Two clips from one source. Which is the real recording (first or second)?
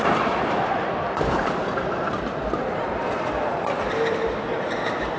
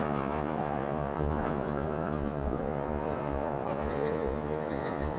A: first